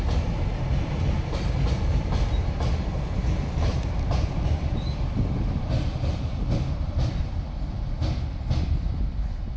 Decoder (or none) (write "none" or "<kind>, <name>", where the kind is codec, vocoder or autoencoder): none